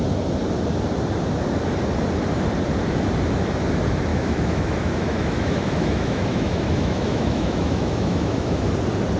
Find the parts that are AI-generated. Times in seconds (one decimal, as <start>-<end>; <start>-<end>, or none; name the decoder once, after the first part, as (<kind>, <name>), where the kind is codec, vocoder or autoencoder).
4.1-8.7 (autoencoder, DAC-VAE)